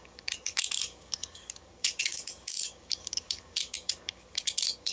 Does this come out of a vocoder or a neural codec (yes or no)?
yes